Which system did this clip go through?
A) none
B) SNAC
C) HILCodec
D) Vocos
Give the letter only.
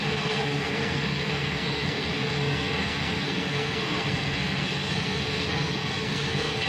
B